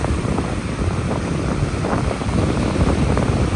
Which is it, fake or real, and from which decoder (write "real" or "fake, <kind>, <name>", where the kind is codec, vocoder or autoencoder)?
fake, vocoder, BigVGAN v2